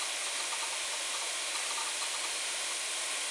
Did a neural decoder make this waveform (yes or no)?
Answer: no